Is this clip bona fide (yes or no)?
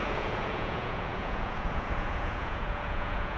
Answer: no